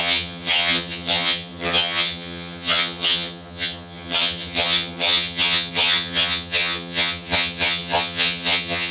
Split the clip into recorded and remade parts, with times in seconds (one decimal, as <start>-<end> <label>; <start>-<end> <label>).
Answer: 0.0-8.9 remade